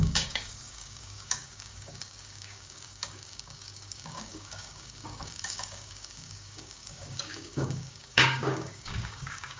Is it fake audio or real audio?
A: fake